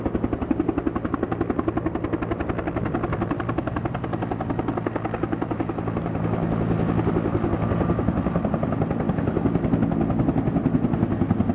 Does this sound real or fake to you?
real